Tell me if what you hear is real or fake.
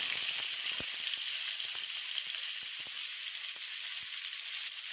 real